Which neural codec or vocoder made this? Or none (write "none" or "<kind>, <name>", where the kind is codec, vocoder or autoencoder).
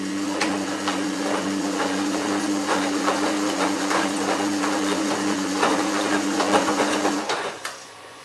vocoder, Vocos